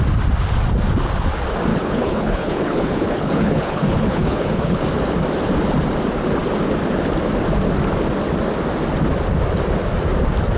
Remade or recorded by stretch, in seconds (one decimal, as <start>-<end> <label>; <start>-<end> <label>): 0.0-1.7 recorded; 1.7-4.8 remade; 4.8-10.6 recorded